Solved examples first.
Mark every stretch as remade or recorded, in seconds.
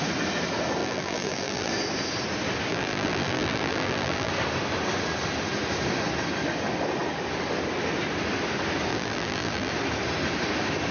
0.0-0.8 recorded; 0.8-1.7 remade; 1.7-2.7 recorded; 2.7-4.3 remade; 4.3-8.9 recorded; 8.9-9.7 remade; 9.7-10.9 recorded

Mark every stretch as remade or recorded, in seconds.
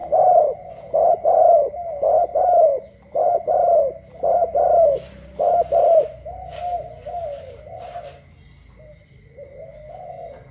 0.0-10.5 recorded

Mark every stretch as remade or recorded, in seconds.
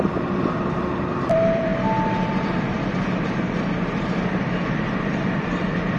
0.0-1.7 remade; 1.7-4.7 recorded; 4.7-6.0 remade